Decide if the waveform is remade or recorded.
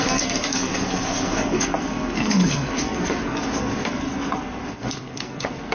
remade